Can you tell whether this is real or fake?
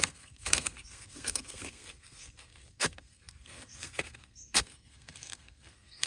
fake